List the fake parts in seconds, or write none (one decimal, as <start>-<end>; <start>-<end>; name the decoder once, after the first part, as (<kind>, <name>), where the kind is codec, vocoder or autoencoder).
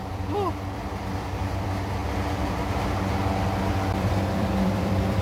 0.0-2.0 (vocoder, BigVGAN v2); 3.7-5.2